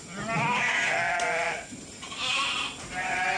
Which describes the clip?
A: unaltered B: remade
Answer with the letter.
A